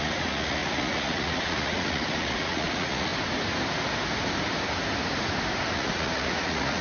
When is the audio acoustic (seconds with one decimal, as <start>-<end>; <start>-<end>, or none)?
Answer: 3.1-5.7

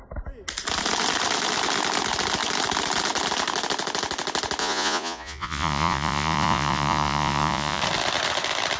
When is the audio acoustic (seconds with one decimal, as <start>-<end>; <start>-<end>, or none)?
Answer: 0.0-4.6; 7.8-8.8